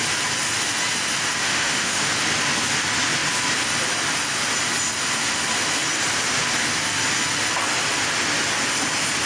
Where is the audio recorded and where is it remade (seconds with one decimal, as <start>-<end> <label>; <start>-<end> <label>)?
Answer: 0.0-1.4 recorded; 1.4-2.1 remade; 2.1-9.3 recorded